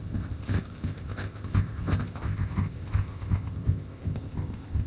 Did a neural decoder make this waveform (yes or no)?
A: yes